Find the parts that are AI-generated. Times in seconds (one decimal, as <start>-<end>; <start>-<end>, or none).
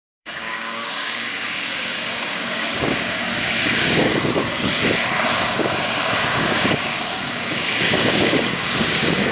0.0-4.1; 5.3-9.3